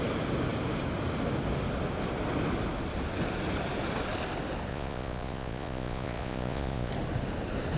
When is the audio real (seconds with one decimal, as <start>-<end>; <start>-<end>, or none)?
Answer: 0.0-4.7; 6.9-7.8